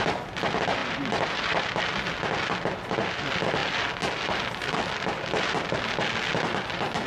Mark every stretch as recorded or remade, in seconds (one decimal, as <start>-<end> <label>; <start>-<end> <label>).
0.0-7.1 recorded